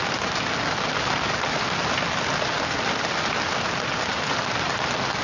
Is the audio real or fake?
real